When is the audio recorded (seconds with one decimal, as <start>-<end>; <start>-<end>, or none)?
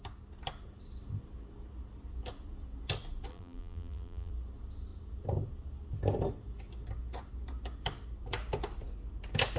0.0-3.3; 4.3-9.6